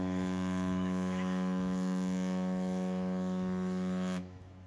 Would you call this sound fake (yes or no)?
yes